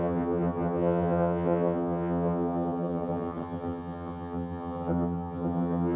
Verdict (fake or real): fake